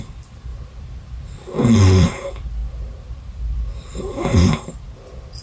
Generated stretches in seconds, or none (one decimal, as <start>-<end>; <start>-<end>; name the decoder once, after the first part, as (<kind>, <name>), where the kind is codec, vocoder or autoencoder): 0.0-0.5 (vocoder, BigVGAN v2); 1.8-5.4